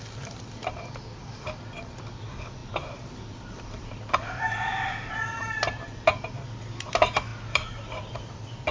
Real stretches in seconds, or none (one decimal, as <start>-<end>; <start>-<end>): 4.7-5.4